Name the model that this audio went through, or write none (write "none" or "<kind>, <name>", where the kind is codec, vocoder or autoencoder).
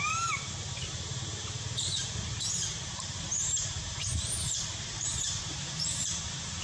vocoder, BigVGAN v2